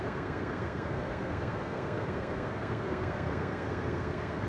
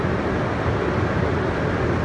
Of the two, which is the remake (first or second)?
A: first